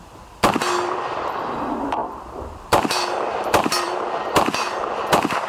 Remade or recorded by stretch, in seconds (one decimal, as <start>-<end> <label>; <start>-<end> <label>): 0.0-5.5 remade